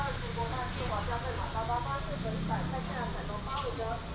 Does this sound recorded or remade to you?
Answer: recorded